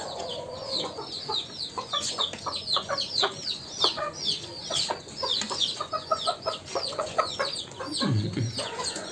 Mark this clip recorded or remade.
remade